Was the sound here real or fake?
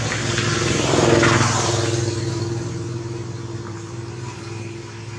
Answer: real